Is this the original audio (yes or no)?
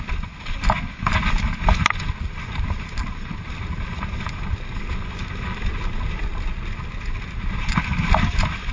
yes